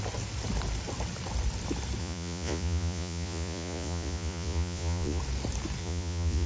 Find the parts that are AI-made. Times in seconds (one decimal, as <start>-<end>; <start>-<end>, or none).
2.0-5.2; 5.8-6.5